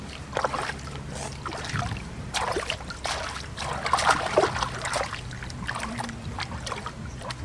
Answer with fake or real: real